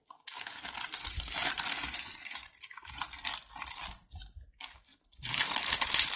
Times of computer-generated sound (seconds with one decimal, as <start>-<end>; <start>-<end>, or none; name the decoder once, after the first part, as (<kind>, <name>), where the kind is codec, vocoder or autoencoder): none